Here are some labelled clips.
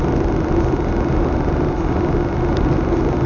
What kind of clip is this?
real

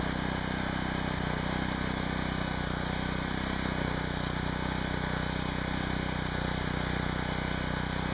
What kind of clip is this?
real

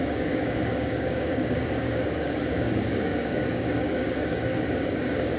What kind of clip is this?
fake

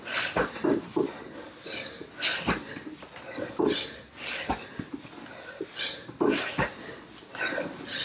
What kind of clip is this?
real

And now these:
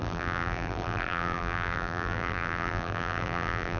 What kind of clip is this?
fake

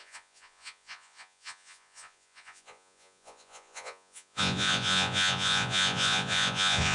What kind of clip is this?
fake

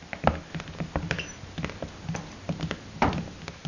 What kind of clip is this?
real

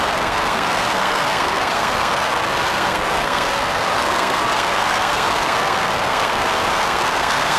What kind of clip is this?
fake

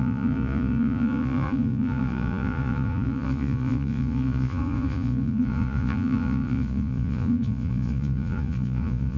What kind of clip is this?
fake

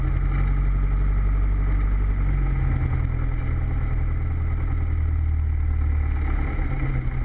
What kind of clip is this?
real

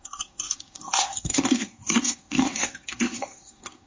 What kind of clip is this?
fake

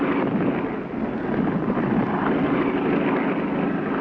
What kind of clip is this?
real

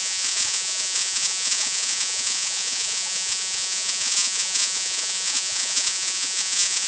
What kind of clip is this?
fake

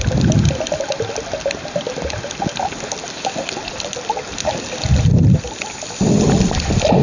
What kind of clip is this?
real